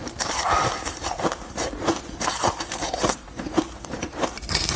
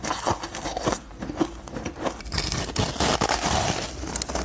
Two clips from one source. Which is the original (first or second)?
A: second